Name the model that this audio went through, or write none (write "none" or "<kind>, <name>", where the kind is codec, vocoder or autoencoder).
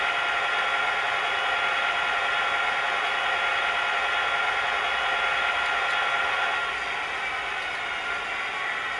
none